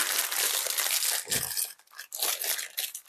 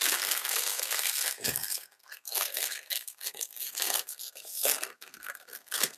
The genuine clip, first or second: first